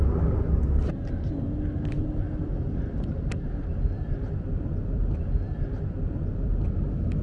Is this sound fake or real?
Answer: real